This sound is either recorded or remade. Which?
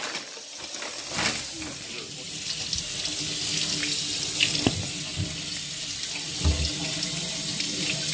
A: recorded